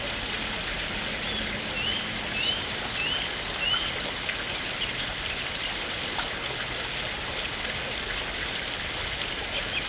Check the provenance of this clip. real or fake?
real